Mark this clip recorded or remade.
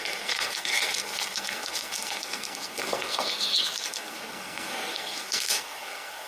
remade